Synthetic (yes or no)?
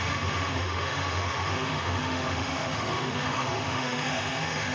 yes